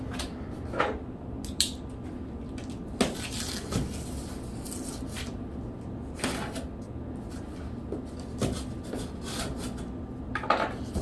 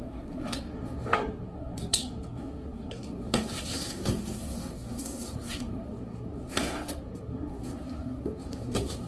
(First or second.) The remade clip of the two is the second